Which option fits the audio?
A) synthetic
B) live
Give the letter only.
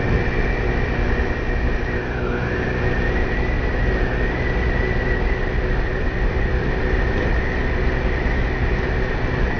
B